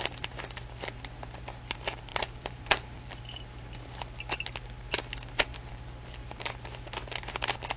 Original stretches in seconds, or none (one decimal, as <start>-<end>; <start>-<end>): 0.0-2.1; 3.2-5.5; 6.5-7.8